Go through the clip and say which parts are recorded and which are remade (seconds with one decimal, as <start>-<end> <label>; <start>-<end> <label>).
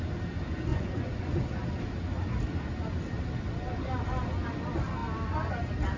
0.0-0.7 recorded; 0.7-1.6 remade; 1.6-6.0 recorded